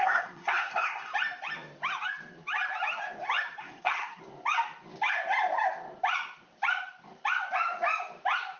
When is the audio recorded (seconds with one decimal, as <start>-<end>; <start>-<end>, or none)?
1.1-3.6; 4.2-8.6